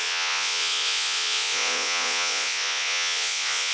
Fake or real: fake